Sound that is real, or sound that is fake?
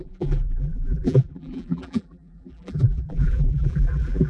fake